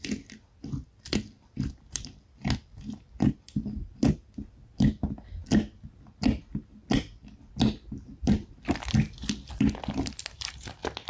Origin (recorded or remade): recorded